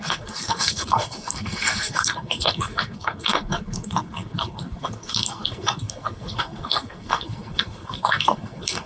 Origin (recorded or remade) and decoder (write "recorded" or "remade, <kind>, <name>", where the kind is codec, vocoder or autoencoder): remade, codec, SNAC